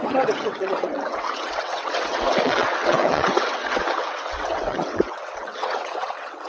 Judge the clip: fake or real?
fake